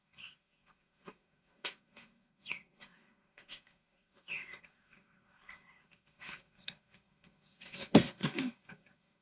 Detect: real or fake fake